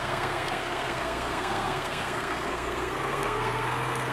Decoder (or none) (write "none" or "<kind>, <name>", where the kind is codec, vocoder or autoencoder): codec, SNAC